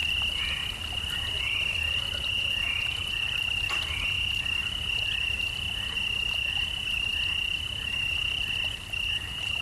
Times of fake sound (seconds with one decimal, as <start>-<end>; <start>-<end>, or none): none